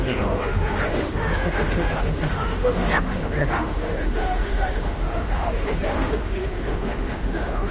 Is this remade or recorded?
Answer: remade